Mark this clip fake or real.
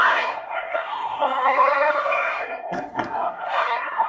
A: fake